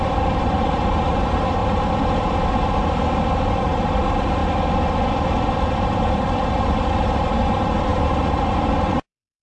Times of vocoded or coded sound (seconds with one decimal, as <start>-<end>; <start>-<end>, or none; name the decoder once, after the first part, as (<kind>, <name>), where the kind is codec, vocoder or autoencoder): 0.0-1.6 (vocoder, BigVGAN v2); 3.6-4.4; 5.4-9.4